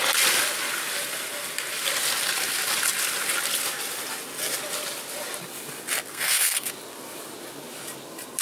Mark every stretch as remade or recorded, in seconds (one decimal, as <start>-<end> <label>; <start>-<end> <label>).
0.0-6.1 recorded; 6.1-6.7 remade; 6.7-8.4 recorded